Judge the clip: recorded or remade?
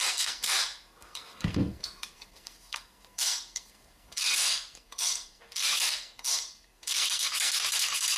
remade